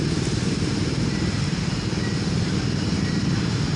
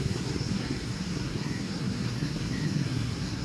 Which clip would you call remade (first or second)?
second